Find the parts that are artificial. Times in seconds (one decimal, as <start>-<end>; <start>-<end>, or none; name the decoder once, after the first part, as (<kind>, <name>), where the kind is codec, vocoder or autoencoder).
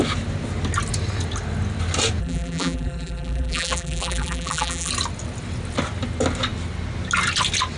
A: 2.2-4.9 (vocoder, BigVGAN v2)